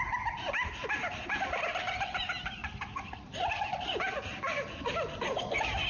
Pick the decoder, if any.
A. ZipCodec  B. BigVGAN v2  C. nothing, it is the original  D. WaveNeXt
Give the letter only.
C